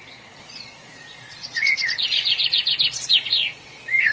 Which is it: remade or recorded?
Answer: remade